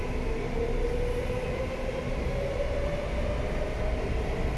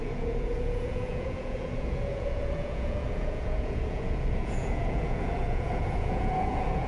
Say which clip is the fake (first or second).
second